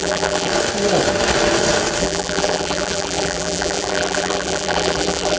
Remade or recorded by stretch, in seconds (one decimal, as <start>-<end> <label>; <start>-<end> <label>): 0.0-0.5 remade; 0.5-2.0 recorded; 2.0-5.4 remade